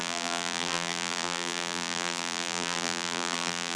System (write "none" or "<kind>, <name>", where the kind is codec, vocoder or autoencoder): vocoder, BigVGAN v2